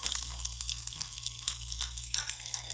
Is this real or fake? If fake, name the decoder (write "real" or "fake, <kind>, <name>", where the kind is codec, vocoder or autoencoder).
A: fake, codec, SNAC